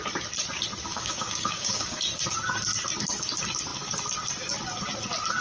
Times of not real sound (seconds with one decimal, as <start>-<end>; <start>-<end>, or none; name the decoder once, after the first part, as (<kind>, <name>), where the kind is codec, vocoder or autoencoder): 0.9-2.0 (codec, DAC)